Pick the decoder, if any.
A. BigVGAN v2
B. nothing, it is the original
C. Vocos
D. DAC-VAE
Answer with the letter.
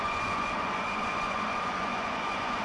C